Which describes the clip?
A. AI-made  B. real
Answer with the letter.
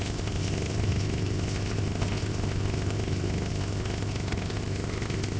A